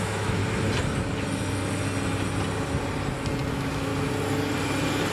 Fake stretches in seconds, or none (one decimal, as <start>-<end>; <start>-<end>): 0.0-0.4; 3.5-3.9